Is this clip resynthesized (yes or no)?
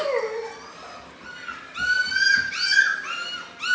no